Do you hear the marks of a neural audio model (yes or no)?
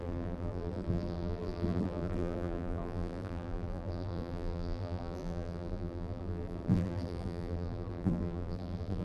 yes